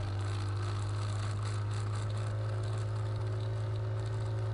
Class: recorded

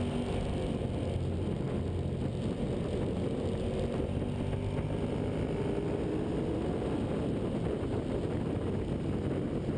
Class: recorded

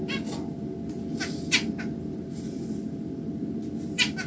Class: recorded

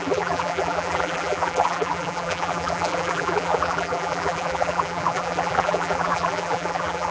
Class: remade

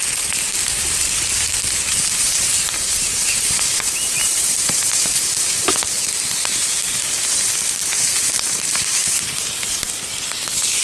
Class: remade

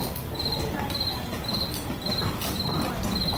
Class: recorded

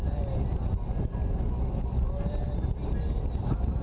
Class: remade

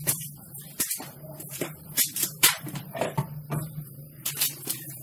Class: remade